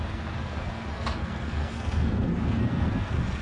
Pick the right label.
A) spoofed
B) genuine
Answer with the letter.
A